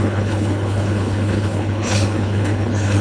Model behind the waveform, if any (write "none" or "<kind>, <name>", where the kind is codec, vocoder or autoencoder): codec, HILCodec